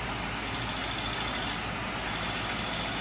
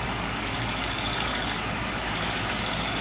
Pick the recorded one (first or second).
first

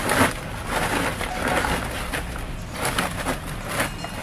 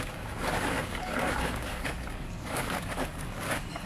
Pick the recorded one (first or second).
first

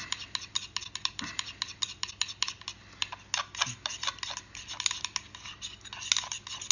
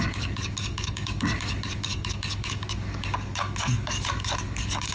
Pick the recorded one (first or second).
first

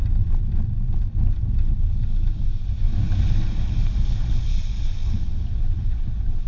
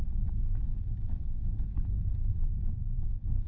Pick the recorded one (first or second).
first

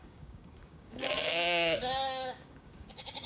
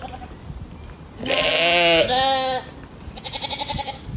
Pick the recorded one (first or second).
second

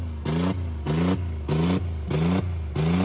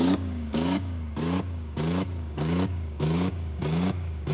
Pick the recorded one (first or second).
first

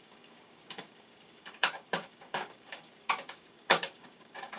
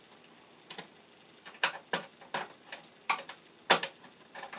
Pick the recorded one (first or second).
second